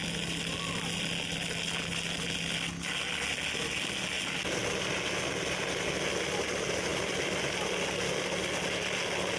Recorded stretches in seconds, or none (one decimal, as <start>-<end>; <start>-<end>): 0.0-9.4